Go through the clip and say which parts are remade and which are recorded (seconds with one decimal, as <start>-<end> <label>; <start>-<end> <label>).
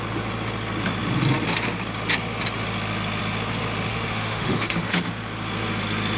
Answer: 0.0-3.9 recorded; 3.9-5.1 remade; 5.1-6.2 recorded